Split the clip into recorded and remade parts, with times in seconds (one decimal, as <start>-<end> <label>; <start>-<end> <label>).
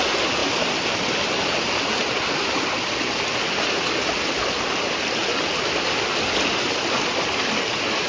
0.0-8.1 recorded